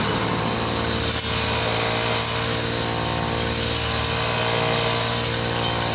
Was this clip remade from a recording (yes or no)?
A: no